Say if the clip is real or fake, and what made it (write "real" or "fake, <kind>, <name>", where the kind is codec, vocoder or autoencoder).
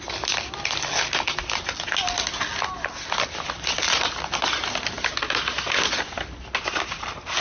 real